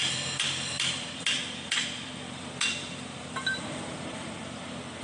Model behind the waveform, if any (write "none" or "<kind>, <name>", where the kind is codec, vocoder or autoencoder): vocoder, BigVGAN v2